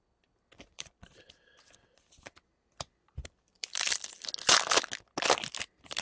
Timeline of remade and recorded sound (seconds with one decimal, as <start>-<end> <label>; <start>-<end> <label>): 0.0-0.7 recorded; 0.7-4.3 remade; 4.3-6.0 recorded